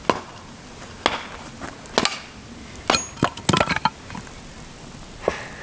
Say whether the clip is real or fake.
real